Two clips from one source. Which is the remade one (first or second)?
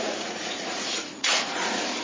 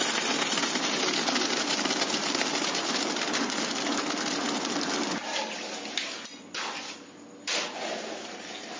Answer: first